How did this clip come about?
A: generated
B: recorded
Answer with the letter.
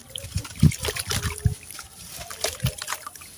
B